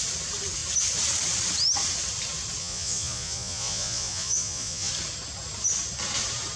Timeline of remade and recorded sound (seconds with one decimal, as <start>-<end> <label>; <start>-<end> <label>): 0.0-2.6 recorded; 2.6-4.9 remade; 4.9-6.6 recorded

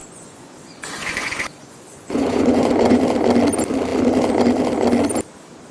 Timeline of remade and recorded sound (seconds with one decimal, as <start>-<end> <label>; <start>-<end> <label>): 0.0-3.0 remade; 3.0-5.7 recorded

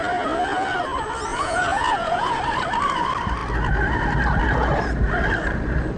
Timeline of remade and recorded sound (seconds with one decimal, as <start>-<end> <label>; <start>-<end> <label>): 0.0-1.3 recorded; 1.3-2.4 remade; 2.4-6.0 recorded